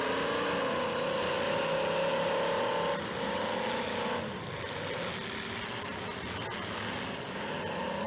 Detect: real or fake real